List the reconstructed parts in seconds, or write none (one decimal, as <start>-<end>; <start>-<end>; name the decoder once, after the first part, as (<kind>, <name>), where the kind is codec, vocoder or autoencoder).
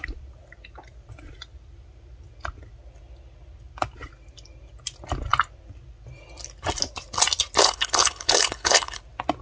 7.6-9.0 (codec, HILCodec)